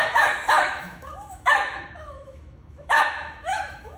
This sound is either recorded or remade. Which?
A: remade